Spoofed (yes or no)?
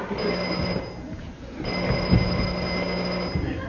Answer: no